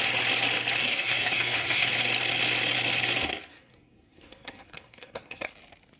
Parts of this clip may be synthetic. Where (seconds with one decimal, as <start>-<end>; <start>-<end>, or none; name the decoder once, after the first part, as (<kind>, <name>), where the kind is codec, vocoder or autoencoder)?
0.8-1.9 (codec, SNAC); 3.5-5.5